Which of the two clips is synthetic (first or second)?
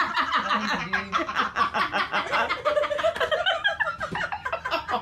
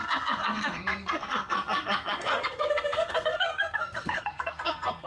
second